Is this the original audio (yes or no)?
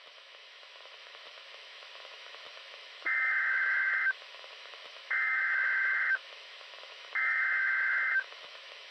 no